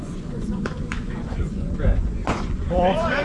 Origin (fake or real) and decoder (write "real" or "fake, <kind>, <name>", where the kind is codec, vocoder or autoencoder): fake, vocoder, Vocos